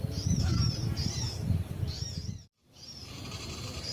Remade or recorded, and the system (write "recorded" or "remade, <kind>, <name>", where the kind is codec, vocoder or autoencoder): remade, vocoder, BigVGAN v2